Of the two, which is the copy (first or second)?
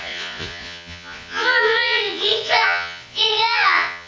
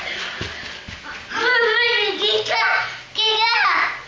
first